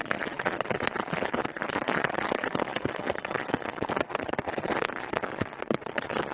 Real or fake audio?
fake